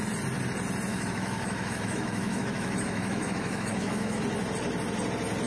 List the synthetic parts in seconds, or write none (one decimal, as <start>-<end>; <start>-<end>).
0.9-4.2